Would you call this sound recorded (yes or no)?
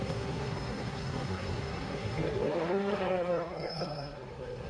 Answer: no